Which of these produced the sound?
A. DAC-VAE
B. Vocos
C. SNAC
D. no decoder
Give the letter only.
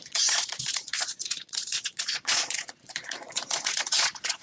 B